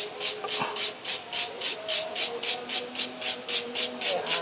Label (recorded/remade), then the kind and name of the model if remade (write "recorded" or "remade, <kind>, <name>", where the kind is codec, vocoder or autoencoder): recorded